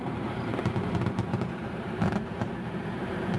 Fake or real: fake